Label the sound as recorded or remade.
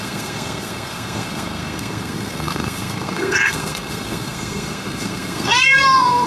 remade